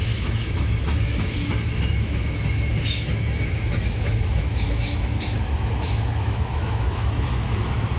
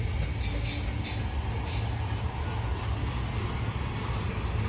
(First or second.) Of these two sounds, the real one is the second